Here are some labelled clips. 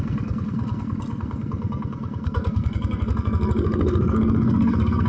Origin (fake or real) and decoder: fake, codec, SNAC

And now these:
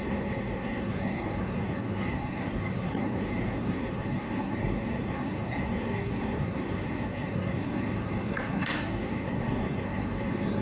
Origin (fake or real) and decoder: fake, codec, SNAC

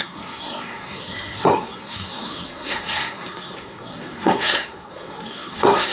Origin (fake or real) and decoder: fake, codec, SNAC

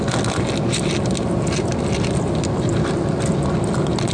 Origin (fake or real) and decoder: real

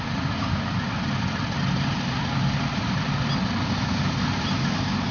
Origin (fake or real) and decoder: real